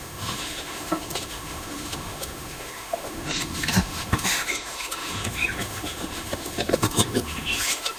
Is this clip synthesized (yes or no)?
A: yes